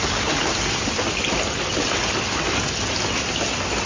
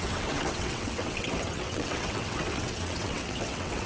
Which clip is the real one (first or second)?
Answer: first